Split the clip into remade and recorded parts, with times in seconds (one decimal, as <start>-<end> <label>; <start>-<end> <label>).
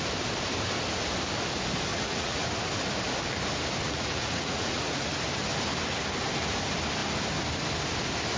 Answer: 0.0-1.9 recorded; 1.9-2.5 remade; 2.5-3.8 recorded; 3.8-5.1 remade; 5.1-8.4 recorded